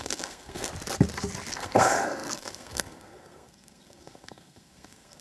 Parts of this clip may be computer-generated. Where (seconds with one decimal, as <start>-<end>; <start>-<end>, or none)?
0.0-0.7; 1.5-5.2